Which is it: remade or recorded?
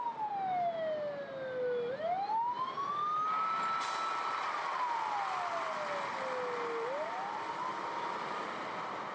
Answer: recorded